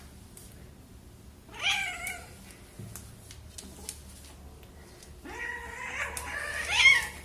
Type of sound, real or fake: real